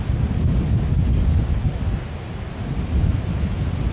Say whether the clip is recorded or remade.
recorded